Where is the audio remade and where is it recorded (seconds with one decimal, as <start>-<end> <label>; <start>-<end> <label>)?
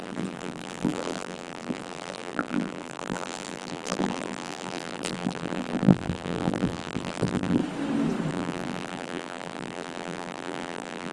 0.0-7.6 remade; 7.6-8.3 recorded; 8.3-11.1 remade